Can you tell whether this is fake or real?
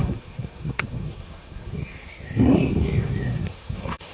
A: fake